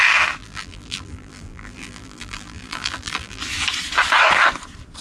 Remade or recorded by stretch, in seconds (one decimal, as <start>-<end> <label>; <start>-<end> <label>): 0.0-0.4 recorded; 0.4-3.4 remade; 3.4-5.0 recorded